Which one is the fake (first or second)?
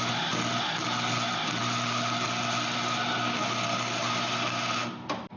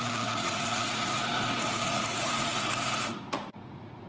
second